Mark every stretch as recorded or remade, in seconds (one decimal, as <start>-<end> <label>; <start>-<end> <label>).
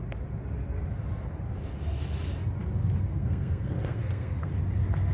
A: 0.0-3.1 recorded; 3.1-4.5 remade; 4.5-5.1 recorded